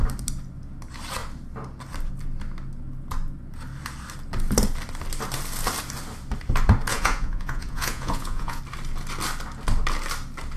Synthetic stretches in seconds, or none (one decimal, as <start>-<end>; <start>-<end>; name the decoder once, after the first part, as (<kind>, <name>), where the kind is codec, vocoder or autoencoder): 6.9-8.6 (vocoder, Vocos)